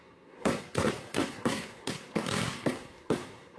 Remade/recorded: remade